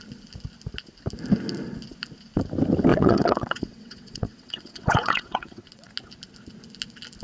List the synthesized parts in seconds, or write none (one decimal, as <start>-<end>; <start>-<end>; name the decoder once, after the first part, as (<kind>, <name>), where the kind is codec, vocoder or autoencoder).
2.9-5.9 (vocoder, WaveNeXt)